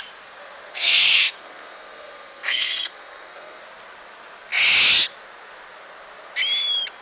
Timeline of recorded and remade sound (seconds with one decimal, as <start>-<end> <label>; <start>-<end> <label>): 0.0-0.7 recorded; 0.7-3.6 remade; 3.6-7.0 recorded

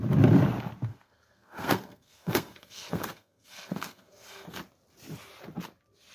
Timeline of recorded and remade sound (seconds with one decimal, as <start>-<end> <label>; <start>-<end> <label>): 0.0-0.9 recorded; 0.9-4.6 remade; 4.6-6.1 recorded

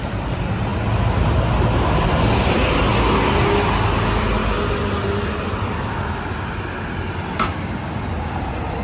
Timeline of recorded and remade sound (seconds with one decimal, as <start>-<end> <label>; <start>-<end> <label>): 0.0-8.8 recorded

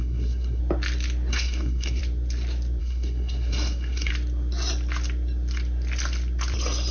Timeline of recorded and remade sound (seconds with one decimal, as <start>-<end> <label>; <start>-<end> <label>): 0.0-0.6 remade; 0.6-1.3 recorded; 1.3-2.0 remade; 2.0-2.8 recorded; 2.8-4.1 remade; 4.1-6.9 recorded

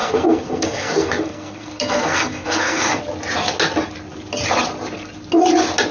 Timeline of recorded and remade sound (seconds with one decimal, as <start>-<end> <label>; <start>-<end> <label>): 0.0-3.0 remade; 3.0-5.9 recorded